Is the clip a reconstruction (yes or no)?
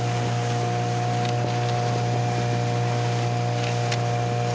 no